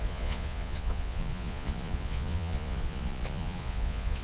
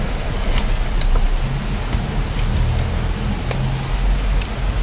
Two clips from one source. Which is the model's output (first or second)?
first